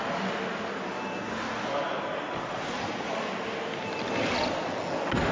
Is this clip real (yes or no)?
yes